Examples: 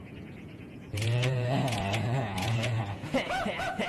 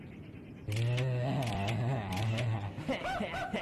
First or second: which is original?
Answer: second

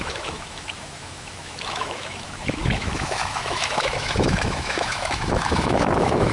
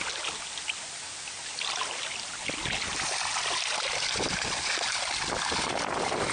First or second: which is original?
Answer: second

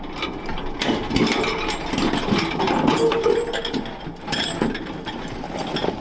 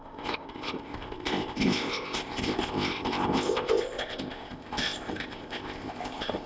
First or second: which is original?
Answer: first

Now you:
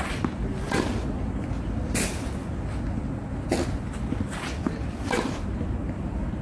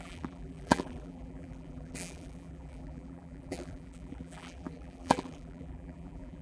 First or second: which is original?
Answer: first